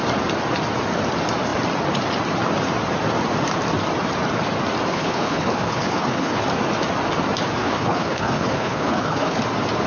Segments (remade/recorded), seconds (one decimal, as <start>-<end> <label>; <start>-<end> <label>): 0.0-4.9 recorded; 4.9-6.4 remade; 6.4-7.6 recorded; 7.6-9.4 remade; 9.4-9.9 recorded

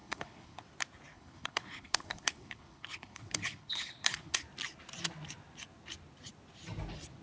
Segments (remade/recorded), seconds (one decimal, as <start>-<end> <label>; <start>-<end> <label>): 0.0-0.6 remade; 0.6-1.1 recorded; 1.1-4.4 remade; 4.4-7.2 recorded

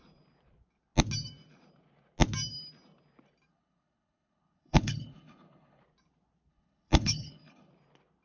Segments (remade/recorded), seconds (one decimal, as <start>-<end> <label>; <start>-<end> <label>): 0.0-3.5 recorded; 3.5-5.8 remade; 5.8-6.5 recorded; 6.5-7.7 remade; 7.7-8.2 recorded

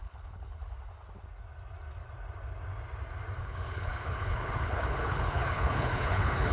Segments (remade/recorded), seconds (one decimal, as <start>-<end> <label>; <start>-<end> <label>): 0.0-0.6 remade; 0.6-3.4 recorded; 3.4-6.5 remade

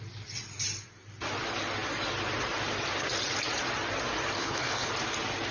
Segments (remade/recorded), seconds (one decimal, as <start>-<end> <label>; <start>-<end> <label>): 0.0-4.4 recorded; 4.4-4.9 remade; 4.9-5.5 recorded

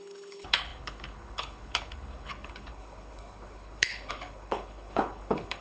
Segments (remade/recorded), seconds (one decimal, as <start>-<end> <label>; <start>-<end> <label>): 0.0-5.6 remade

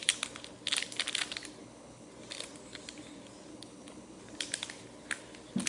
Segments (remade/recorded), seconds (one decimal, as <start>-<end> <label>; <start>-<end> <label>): 0.0-1.6 recorded; 1.6-2.1 remade; 2.1-3.5 recorded; 3.5-4.2 remade; 4.2-5.7 recorded